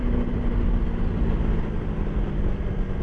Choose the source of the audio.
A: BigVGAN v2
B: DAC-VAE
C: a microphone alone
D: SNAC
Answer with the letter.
C